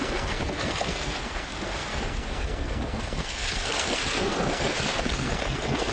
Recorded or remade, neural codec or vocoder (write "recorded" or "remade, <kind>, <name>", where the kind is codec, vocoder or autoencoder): remade, codec, SNAC